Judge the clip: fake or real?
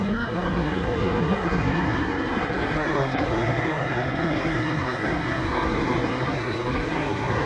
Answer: fake